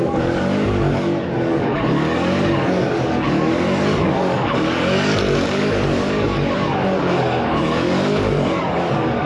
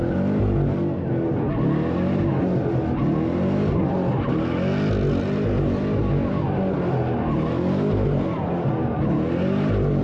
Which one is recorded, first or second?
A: second